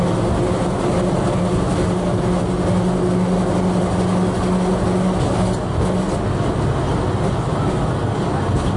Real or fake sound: real